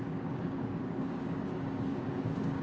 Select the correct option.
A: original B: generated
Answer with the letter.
B